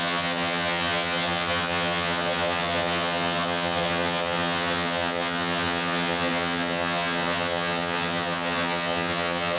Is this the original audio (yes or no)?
no